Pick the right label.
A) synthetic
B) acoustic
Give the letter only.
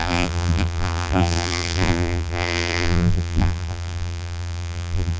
A